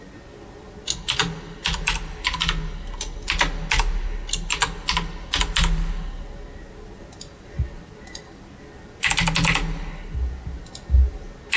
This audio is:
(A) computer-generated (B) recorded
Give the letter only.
B